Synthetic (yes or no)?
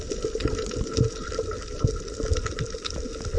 no